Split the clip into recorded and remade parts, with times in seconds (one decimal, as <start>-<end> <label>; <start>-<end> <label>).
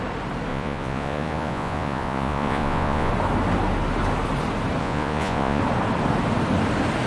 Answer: 0.0-0.5 recorded; 0.5-3.1 remade; 3.1-4.8 recorded; 4.8-5.6 remade; 5.6-7.1 recorded